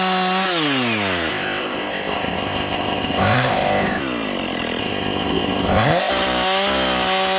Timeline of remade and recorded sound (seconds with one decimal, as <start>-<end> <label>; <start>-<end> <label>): 0.0-1.3 recorded; 1.3-4.0 remade; 4.0-4.8 recorded; 4.8-6.1 remade; 6.1-7.4 recorded